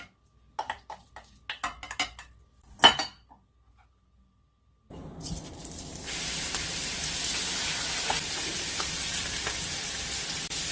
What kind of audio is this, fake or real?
real